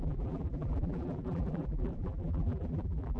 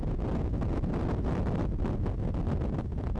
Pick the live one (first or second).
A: second